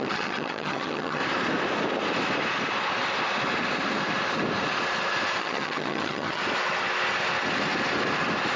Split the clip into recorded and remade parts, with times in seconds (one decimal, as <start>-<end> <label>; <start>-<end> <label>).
0.0-1.2 remade; 1.2-5.4 recorded; 5.4-6.4 remade; 6.4-8.6 recorded